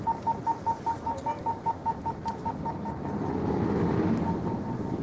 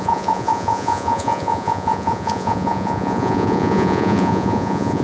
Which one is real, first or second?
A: first